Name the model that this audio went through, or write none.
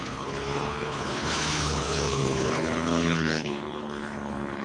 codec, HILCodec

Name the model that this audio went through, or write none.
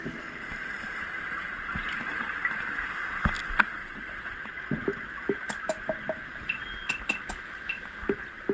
none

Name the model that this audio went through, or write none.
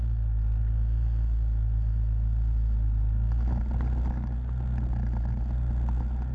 none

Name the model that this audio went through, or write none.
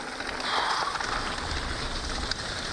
none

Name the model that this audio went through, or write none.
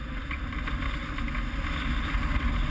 none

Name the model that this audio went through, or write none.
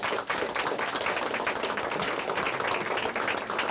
none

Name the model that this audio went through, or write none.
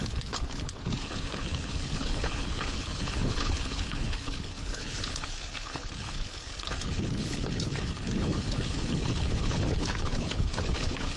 codec, HILCodec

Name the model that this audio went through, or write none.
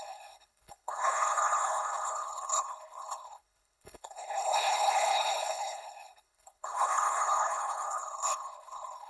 codec, HILCodec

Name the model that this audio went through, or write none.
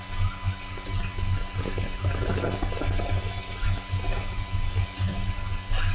none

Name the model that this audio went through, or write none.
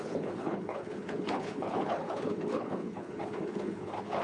codec, HILCodec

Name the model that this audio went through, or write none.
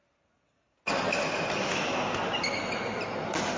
none